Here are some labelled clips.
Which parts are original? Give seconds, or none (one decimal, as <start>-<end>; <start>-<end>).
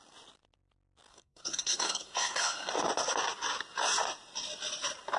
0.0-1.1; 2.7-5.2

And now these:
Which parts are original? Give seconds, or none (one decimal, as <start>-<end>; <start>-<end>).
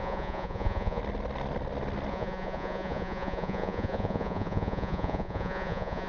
1.0-2.1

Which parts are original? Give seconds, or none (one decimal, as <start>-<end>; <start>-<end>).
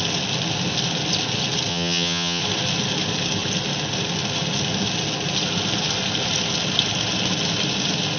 0.0-1.7; 2.4-8.2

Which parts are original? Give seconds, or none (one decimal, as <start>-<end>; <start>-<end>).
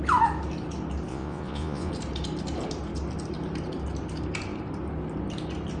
0.0-1.1; 1.9-5.8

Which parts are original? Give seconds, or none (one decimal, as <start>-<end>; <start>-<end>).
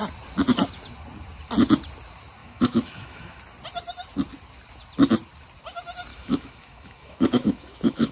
0.0-2.4; 3.4-6.1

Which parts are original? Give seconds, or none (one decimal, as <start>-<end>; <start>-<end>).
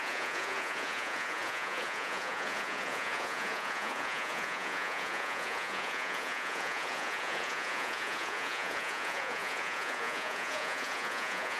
none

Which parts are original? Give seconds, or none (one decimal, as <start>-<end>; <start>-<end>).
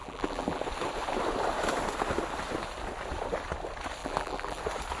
0.6-4.0; 4.6-5.0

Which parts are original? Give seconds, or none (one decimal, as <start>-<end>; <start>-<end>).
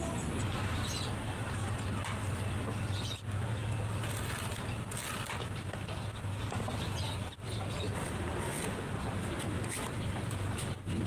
1.6-6.4; 8.5-9.0